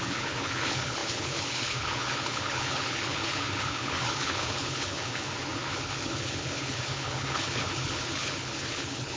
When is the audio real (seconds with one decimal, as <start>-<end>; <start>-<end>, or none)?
none